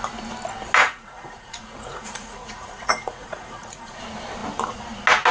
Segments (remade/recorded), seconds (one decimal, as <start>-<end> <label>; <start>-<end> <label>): 0.0-0.8 recorded; 0.8-4.0 remade; 4.0-5.3 recorded